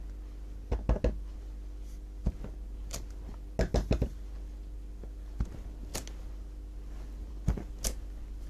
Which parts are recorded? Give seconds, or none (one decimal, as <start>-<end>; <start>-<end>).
0.0-8.5

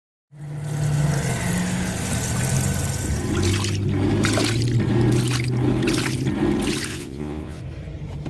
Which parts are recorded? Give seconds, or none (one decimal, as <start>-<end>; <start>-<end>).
0.0-6.9; 7.6-8.3

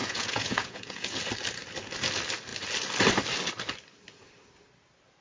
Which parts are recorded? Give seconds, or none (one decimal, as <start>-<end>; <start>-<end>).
1.2-5.2

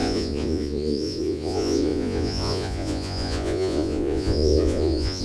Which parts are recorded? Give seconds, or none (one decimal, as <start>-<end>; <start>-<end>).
none